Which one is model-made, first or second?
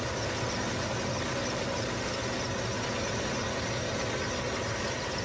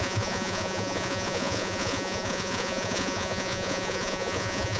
second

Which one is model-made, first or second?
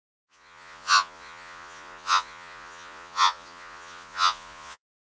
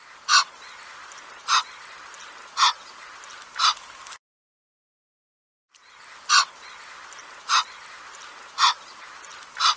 first